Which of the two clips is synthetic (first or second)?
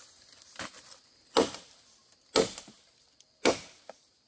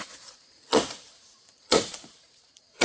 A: second